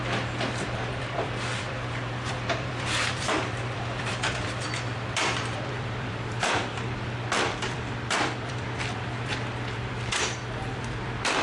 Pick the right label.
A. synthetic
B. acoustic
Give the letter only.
A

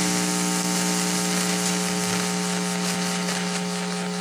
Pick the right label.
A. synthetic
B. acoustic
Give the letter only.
B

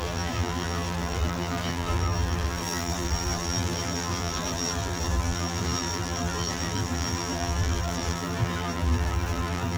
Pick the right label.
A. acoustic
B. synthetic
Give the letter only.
B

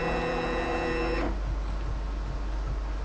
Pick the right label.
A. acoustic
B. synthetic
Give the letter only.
A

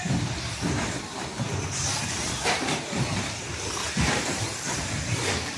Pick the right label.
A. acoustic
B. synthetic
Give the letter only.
B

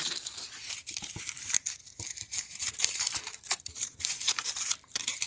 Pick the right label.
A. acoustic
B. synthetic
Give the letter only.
B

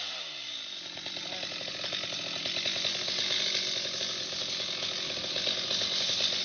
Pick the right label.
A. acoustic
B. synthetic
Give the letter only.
A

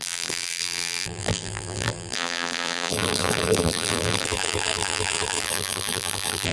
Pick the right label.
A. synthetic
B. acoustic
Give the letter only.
A